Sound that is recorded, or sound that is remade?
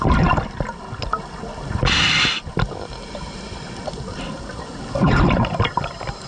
recorded